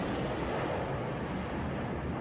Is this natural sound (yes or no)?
yes